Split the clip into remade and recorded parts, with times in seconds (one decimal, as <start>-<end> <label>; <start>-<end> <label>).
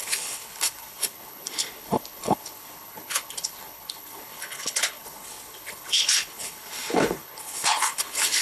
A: 0.0-8.4 remade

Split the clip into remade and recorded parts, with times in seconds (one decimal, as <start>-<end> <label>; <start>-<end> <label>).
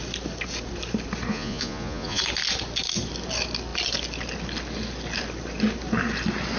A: 0.0-1.3 recorded; 1.3-2.2 remade; 2.2-6.6 recorded